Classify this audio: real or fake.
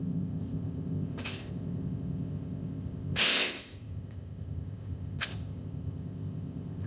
fake